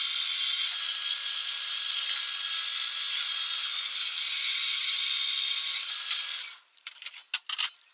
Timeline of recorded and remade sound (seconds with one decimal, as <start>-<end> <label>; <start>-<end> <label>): 0.0-7.9 recorded